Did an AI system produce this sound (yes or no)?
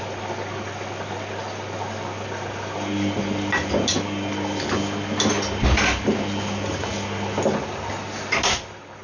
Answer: no